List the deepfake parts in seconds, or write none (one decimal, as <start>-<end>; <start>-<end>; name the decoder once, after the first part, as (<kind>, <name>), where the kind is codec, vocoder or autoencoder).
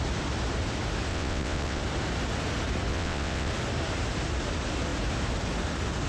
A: 1.1-1.8 (vocoder, WaveNeXt); 2.9-3.5